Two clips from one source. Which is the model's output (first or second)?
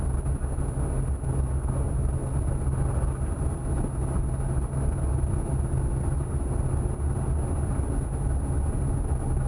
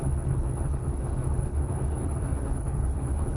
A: second